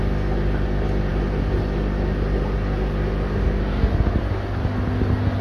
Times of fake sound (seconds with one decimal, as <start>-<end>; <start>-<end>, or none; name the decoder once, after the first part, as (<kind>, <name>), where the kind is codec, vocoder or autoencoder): none